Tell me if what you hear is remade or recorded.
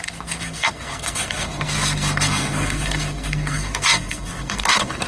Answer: remade